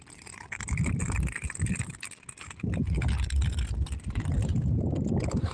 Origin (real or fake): real